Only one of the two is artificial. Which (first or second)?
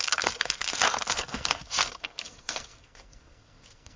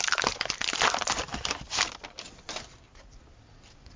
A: first